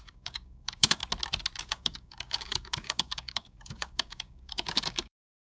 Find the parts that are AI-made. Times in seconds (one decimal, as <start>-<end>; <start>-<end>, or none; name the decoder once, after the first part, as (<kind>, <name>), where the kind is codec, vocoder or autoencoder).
0.0-1.0 (codec, DAC); 1.6-5.6